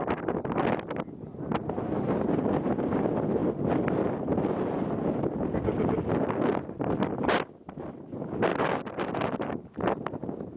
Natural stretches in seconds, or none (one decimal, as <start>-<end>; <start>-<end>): 0.0-10.6